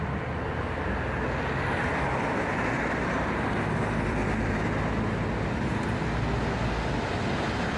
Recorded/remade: recorded